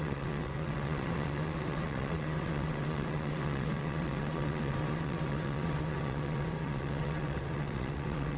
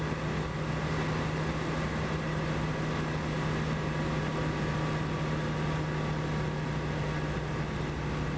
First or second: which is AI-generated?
first